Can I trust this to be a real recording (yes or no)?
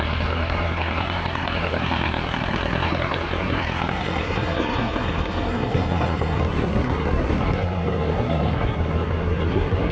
no